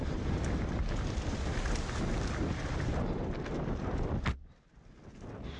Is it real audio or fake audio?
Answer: real